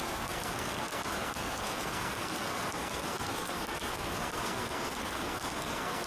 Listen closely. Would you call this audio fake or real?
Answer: fake